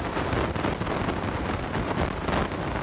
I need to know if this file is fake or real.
real